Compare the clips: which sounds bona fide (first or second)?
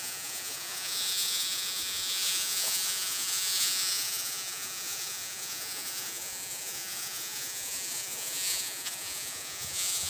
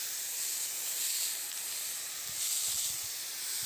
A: second